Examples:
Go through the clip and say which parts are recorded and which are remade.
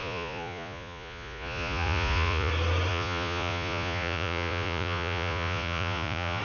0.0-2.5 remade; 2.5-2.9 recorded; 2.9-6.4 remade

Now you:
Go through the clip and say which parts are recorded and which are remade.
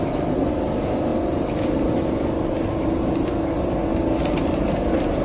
0.0-5.2 recorded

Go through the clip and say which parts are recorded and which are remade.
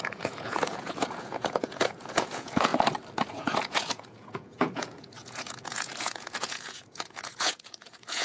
0.0-2.7 remade; 2.7-3.3 recorded; 3.3-8.2 remade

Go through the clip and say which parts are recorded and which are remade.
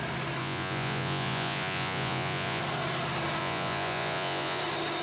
0.0-0.4 recorded; 0.4-2.6 remade; 2.6-3.4 recorded; 3.4-4.6 remade; 4.6-5.0 recorded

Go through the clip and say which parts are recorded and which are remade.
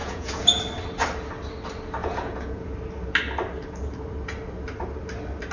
0.0-0.6 remade; 0.6-2.0 recorded; 2.0-2.7 remade; 2.7-5.5 recorded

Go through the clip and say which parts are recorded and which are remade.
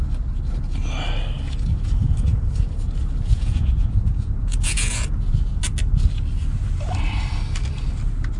0.0-3.3 recorded; 3.3-5.6 remade; 5.6-8.4 recorded